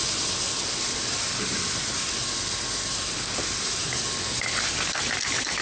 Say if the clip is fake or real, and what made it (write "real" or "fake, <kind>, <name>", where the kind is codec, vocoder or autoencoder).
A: real